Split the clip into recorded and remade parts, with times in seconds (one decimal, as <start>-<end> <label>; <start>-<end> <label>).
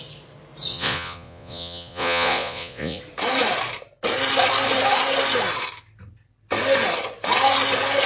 0.0-0.7 recorded; 0.7-3.0 remade; 3.0-8.1 recorded